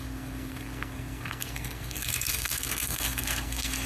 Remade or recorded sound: remade